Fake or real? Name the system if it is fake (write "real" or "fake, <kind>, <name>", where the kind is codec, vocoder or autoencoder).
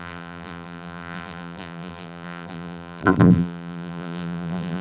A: fake, vocoder, BigVGAN v2